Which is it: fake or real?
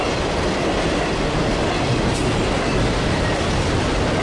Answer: real